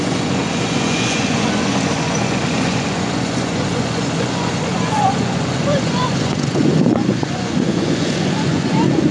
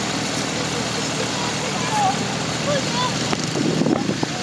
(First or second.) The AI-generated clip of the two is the first